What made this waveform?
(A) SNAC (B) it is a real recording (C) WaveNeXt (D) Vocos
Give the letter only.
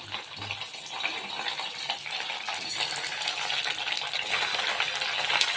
B